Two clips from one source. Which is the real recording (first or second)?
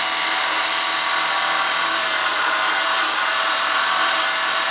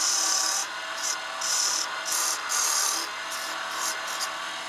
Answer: second